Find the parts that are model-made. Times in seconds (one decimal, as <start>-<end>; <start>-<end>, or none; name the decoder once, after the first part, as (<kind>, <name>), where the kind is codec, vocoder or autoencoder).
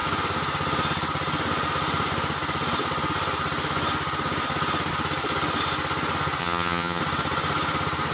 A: 6.4-7.0 (vocoder, HiFi-GAN)